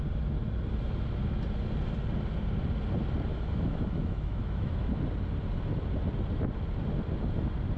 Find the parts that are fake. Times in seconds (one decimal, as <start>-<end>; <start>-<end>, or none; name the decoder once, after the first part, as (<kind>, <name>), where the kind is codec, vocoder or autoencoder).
3.3-5.0 (autoencoder, DAC-VAE)